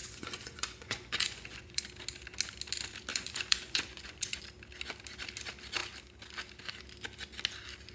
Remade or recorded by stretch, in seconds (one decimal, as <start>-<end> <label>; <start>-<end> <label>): 0.0-1.8 remade; 1.8-3.1 recorded; 3.1-4.4 remade; 4.4-7.9 recorded